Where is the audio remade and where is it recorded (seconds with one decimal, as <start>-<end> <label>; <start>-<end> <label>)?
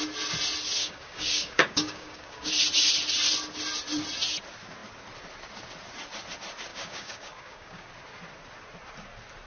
0.0-0.8 recorded; 0.8-2.5 remade; 2.5-6.7 recorded; 6.7-7.9 remade; 7.9-9.5 recorded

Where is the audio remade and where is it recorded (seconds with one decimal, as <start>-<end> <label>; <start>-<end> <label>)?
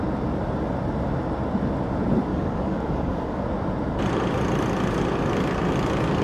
0.0-2.3 recorded; 2.3-3.4 remade; 3.4-6.2 recorded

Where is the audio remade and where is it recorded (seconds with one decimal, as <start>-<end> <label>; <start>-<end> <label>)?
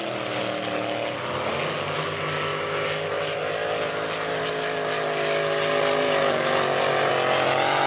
0.0-7.9 recorded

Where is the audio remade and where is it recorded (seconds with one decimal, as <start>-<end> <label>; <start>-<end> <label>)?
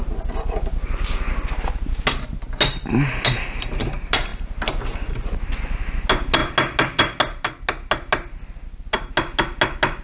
0.0-10.0 recorded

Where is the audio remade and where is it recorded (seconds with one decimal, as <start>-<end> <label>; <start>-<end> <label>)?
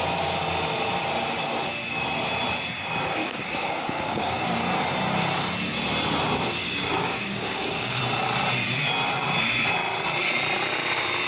0.0-3.2 recorded; 3.2-4.4 remade; 4.4-6.6 recorded; 6.6-8.0 remade; 8.0-11.3 recorded